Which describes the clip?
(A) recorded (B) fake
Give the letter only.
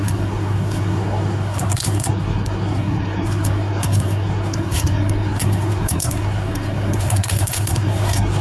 B